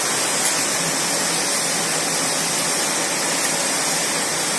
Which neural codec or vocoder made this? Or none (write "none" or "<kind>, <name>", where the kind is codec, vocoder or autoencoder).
none